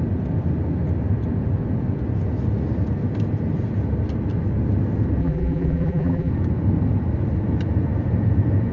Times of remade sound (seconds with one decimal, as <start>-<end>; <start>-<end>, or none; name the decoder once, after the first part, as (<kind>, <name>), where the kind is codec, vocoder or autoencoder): 5.2-6.3 (vocoder, BigVGAN v2)